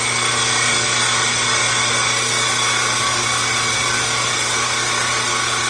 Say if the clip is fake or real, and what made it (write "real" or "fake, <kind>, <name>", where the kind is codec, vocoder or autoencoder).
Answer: real